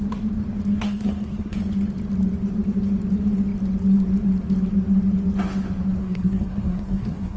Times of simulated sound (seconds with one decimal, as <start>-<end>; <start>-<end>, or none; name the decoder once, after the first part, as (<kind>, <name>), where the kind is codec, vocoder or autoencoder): 0.7-1.6 (codec, SNAC); 6.0-7.4